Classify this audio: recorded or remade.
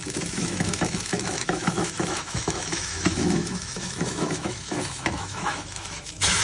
remade